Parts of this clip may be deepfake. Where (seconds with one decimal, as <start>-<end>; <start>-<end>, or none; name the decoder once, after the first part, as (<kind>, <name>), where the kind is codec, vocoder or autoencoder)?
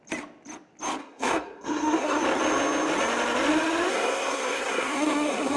1.0-2.2 (codec, SNAC); 3.9-5.6